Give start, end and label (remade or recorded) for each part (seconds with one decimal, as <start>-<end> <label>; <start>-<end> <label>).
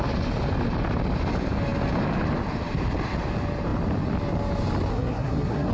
0.0-4.9 recorded; 4.9-5.7 remade